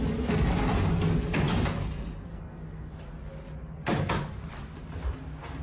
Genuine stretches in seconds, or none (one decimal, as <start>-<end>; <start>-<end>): 0.0-2.3; 2.9-5.6